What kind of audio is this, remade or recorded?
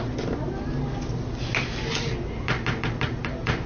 recorded